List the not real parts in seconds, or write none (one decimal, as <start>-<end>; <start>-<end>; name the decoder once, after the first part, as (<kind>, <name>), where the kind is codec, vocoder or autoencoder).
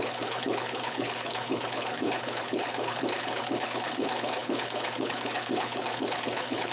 0.0-6.7 (codec, HILCodec)